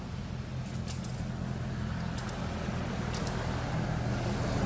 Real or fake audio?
real